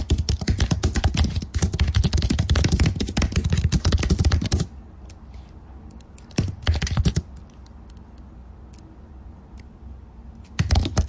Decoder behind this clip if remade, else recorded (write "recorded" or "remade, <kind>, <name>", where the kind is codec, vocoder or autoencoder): recorded